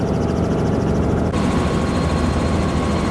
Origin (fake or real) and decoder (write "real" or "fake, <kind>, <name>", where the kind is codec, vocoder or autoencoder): real